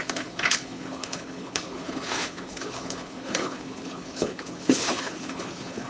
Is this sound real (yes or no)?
no